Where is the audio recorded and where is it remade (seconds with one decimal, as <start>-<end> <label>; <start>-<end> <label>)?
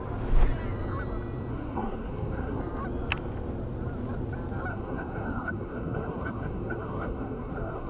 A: 0.0-1.5 recorded; 1.5-2.6 remade; 2.6-4.7 recorded; 4.7-7.9 remade